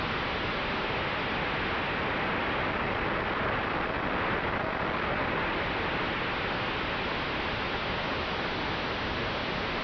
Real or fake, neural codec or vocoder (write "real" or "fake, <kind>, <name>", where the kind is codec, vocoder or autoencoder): real